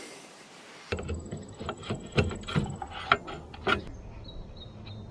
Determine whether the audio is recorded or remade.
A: recorded